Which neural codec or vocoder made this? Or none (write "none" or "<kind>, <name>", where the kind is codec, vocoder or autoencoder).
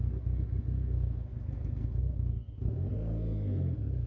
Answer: codec, SNAC